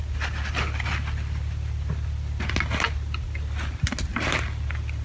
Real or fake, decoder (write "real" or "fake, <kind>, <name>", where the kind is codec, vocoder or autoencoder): real